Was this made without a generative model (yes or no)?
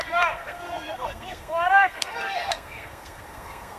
no